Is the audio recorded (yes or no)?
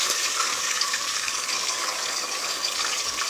no